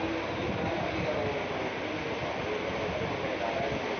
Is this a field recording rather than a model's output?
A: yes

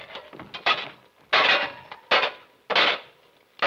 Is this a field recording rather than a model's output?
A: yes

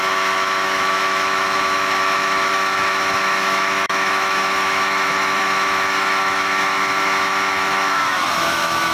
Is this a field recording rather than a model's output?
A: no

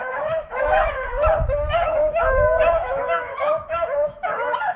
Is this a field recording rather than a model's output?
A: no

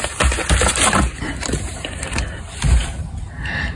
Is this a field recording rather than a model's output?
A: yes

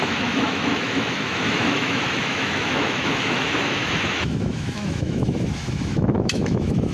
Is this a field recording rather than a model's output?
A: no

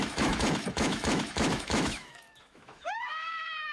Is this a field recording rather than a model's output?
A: no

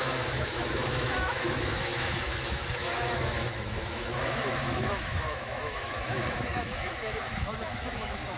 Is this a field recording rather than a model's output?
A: no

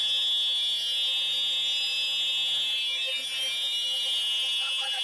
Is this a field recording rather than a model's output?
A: no